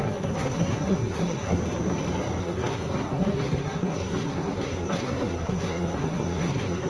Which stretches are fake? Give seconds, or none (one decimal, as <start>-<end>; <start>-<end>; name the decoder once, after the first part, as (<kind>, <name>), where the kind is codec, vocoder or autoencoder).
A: 0.0-1.6 (codec, SNAC); 2.4-6.9